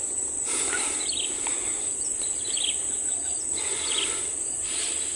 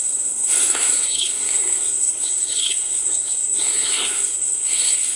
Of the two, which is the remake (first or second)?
second